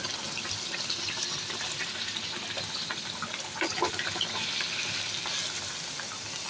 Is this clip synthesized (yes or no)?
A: no